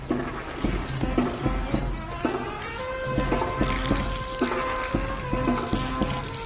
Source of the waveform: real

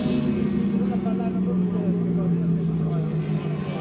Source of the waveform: real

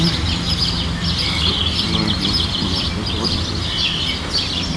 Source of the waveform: fake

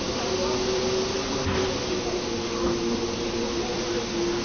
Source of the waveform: real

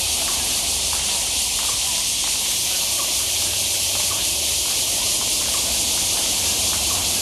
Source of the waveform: fake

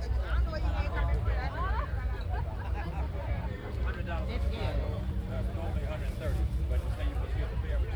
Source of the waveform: fake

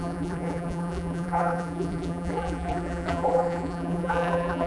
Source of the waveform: fake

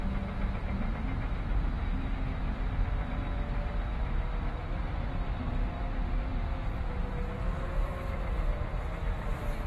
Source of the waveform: real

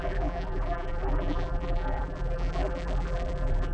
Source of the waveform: fake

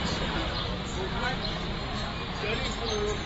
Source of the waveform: real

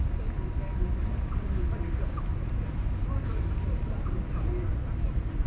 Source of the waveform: real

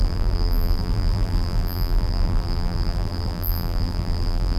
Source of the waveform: fake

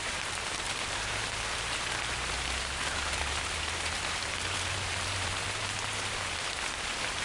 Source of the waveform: fake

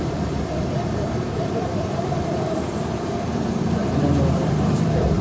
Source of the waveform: fake